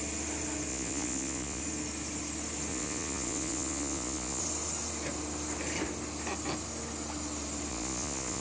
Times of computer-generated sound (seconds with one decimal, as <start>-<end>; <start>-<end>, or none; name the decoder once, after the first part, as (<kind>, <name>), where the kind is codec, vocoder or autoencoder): 0.7-1.6 (vocoder, Vocos); 2.7-4.4; 7.7-8.4